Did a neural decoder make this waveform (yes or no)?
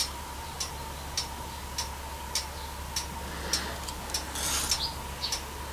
no